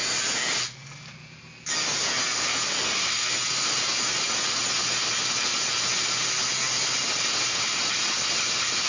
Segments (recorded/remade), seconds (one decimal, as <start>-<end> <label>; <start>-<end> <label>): 0.0-8.9 recorded